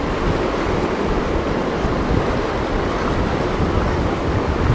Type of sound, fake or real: real